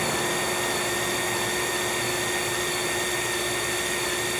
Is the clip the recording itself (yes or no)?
yes